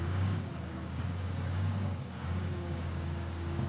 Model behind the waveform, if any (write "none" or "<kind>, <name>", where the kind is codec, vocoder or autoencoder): codec, DAC